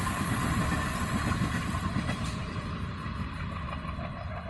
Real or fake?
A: real